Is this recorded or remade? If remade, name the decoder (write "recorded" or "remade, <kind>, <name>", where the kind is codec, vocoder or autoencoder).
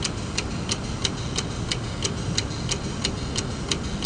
recorded